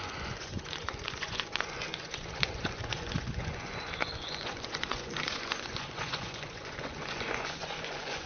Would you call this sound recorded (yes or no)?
no